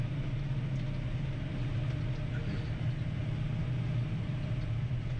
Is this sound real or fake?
real